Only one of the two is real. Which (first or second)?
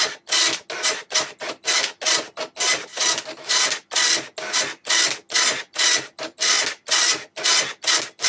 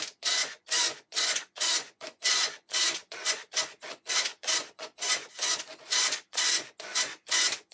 first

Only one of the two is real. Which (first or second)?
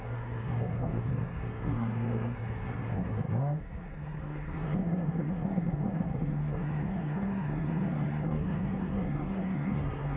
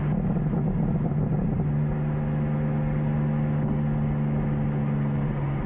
second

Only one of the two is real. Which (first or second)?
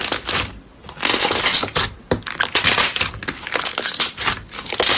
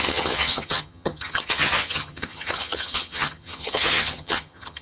first